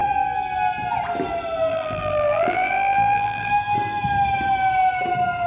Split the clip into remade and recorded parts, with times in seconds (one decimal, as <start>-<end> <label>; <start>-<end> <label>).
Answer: 0.0-1.7 recorded; 1.7-3.5 remade; 3.5-5.5 recorded